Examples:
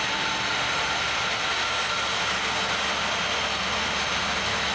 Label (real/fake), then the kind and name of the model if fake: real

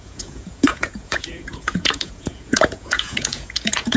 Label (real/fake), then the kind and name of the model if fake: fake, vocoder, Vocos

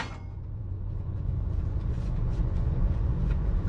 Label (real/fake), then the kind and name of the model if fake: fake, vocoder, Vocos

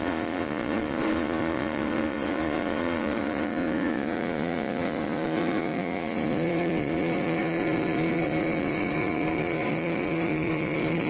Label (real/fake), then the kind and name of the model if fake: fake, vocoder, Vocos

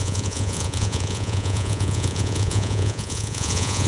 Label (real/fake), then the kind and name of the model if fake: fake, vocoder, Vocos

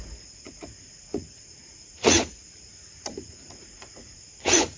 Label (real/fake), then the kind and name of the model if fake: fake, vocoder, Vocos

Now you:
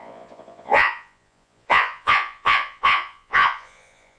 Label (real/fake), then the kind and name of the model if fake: fake, vocoder, Vocos